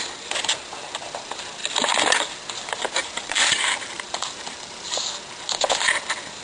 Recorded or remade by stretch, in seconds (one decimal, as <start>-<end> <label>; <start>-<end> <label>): 0.0-3.0 recorded; 3.0-5.0 remade; 5.0-6.4 recorded